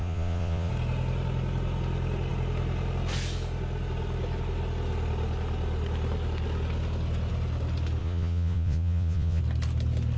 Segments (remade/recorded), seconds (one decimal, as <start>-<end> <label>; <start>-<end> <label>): 0.0-0.7 remade; 0.7-8.0 recorded; 8.0-9.4 remade; 9.4-10.2 recorded